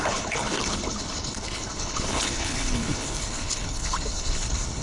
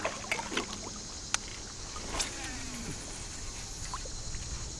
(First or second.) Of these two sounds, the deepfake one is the first